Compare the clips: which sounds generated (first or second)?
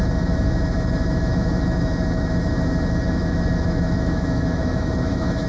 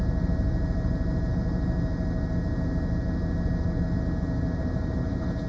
first